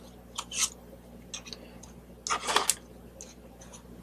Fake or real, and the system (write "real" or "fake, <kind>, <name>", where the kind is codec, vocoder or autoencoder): real